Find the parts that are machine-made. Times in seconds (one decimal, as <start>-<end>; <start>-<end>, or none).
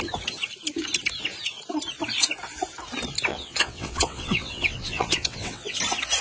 3.3-5.8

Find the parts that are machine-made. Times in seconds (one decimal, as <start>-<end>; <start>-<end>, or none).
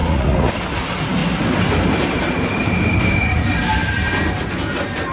0.0-0.5